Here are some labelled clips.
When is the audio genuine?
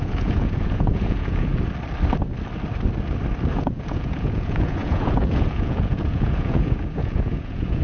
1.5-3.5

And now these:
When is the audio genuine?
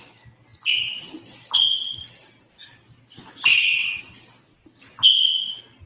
0.0-5.9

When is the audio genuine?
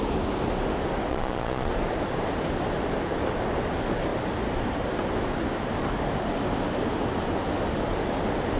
0.0-1.1; 1.7-8.6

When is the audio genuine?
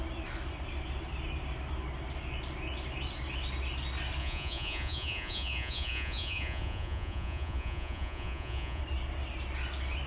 0.0-4.2; 8.8-10.1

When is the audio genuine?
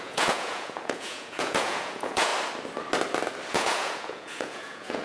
2.3-3.5